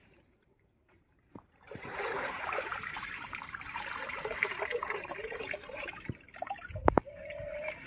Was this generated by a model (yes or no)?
yes